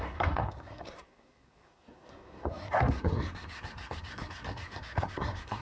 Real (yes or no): no